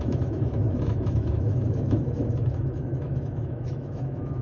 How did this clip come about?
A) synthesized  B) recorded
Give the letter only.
A